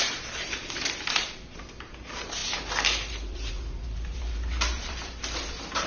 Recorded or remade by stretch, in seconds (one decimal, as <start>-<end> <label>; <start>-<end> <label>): 0.0-5.9 remade